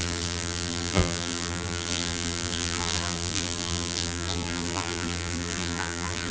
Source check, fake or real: fake